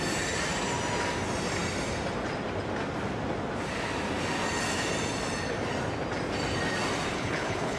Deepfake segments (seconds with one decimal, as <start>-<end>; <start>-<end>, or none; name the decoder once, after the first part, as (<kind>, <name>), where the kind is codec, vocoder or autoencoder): 7.1-7.8 (codec, HILCodec)